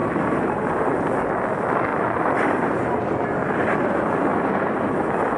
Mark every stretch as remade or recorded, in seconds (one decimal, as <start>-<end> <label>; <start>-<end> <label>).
0.0-0.8 remade; 0.8-1.9 recorded; 1.9-2.9 remade; 2.9-4.3 recorded; 4.3-4.9 remade; 4.9-5.4 recorded